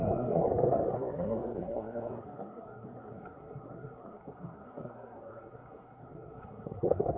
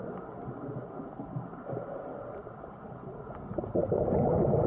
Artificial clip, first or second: first